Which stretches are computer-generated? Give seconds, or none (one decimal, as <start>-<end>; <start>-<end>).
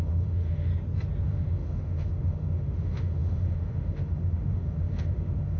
0.0-0.7; 1.2-5.6